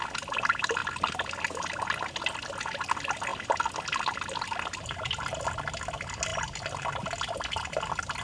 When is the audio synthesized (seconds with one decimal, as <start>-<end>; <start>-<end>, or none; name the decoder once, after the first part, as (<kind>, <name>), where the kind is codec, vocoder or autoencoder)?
none